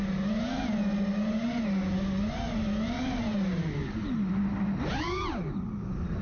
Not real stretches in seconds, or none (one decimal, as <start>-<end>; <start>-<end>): none